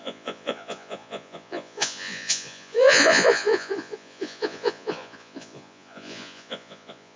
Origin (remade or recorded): remade